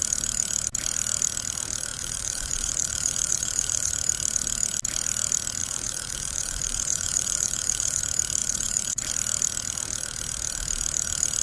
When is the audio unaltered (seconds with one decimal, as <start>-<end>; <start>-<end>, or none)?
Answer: 0.0-1.9; 3.9-5.6; 8.0-8.4; 9.1-11.4